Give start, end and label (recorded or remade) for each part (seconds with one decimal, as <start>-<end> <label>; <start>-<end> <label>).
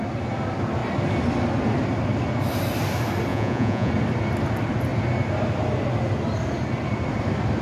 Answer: 0.0-3.3 recorded; 3.3-3.9 remade; 3.9-7.6 recorded